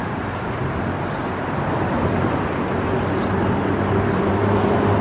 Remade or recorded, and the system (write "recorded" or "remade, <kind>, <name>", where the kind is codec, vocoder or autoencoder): recorded